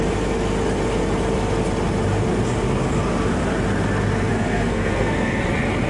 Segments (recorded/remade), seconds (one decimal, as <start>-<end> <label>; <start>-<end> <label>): 0.0-4.1 recorded; 4.1-5.4 remade; 5.4-5.9 recorded